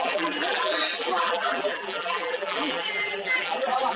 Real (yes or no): no